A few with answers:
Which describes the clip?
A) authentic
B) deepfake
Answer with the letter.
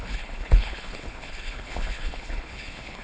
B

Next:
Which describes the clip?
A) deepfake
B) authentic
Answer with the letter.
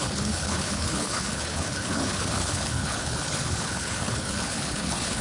A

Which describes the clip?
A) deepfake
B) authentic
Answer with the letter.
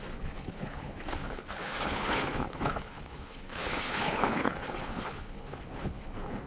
A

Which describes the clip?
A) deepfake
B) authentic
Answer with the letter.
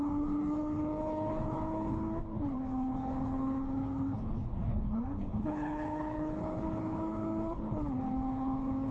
A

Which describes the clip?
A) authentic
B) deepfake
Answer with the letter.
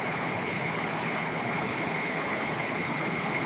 B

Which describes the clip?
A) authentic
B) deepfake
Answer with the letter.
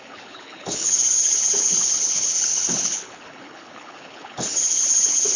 B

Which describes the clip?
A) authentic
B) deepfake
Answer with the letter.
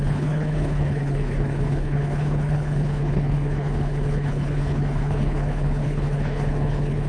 B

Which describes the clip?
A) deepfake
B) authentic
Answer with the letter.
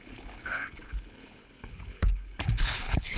A